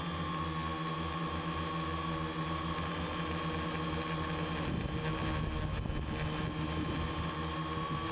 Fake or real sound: real